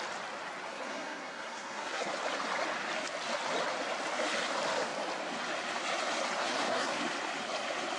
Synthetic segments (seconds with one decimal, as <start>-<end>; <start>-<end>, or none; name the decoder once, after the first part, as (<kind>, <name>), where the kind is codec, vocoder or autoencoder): 0.7-2.1 (codec, SNAC); 6.4-7.0